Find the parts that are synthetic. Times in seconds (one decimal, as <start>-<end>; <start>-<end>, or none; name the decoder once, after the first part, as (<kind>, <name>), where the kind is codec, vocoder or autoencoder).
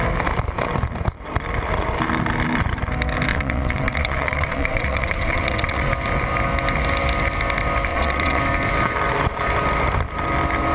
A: 3.3-5.9 (vocoder, WaveNeXt); 7.9-8.4